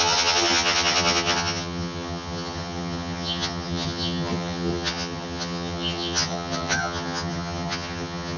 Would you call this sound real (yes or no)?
no